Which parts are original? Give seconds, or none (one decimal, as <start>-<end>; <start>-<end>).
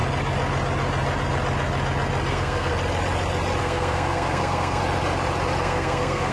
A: 0.0-2.3; 2.7-3.6; 4.8-5.6